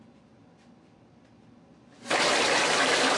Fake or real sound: fake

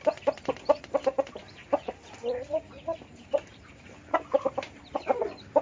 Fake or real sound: fake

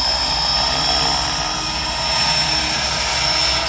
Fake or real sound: real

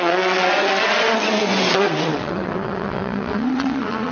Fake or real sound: fake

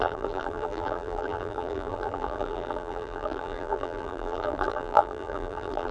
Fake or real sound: fake